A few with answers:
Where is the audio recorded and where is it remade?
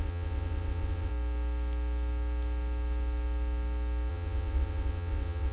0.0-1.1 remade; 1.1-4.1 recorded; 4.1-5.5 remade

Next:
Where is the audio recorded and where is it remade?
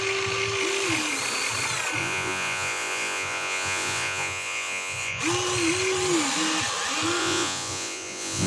0.0-2.0 recorded; 2.0-5.2 remade; 5.2-7.2 recorded; 7.2-8.5 remade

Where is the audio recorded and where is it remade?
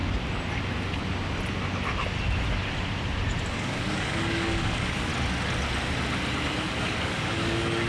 0.0-3.5 recorded; 3.5-5.1 remade; 5.1-6.6 recorded; 6.6-7.9 remade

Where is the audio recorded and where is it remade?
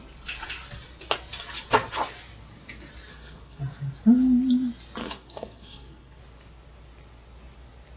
0.0-3.1 recorded; 3.1-3.6 remade; 3.6-5.0 recorded; 5.0-6.2 remade; 6.2-8.0 recorded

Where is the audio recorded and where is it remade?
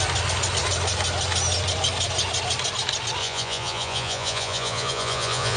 0.0-3.2 recorded; 3.2-5.6 remade